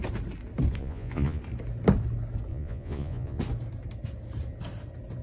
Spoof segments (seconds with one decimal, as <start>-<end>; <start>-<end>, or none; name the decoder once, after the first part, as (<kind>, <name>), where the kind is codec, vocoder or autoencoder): 0.8-1.4 (vocoder, Vocos); 2.5-3.4